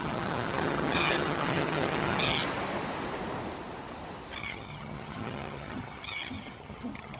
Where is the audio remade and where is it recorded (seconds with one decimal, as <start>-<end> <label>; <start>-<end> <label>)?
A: 0.0-2.4 remade; 2.4-4.4 recorded; 4.4-7.2 remade